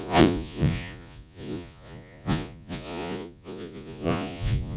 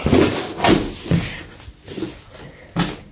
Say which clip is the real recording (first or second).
second